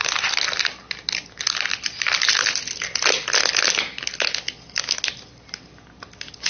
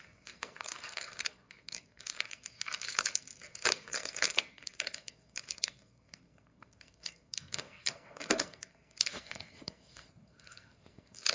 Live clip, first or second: first